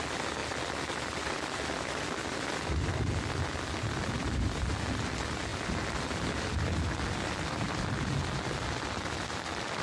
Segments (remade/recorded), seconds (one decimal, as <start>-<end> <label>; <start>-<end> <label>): 0.0-9.8 recorded